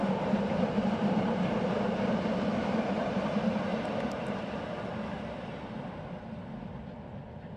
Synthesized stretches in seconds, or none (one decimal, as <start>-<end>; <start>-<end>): 0.0-3.7